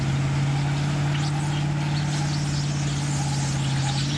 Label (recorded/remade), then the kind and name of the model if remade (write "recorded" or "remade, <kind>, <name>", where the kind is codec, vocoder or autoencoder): recorded